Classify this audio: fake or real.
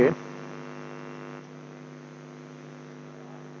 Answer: real